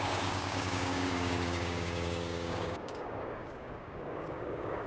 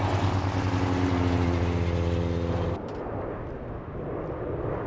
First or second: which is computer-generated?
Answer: first